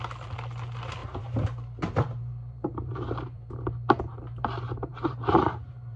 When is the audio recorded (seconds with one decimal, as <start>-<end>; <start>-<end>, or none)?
0.0-1.0; 3.5-4.9

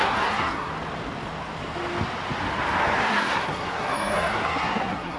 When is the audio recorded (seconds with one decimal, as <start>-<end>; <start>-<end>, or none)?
0.7-3.0